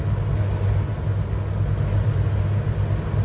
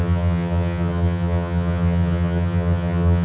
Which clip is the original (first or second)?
first